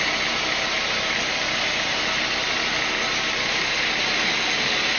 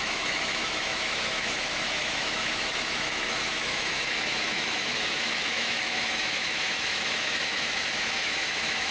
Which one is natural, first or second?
first